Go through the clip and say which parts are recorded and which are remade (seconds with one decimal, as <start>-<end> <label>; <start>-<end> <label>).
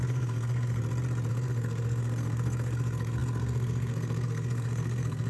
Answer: 0.0-0.8 remade; 0.8-1.3 recorded; 1.3-5.3 remade